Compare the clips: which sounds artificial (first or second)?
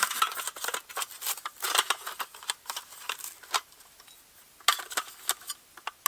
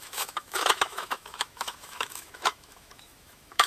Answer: second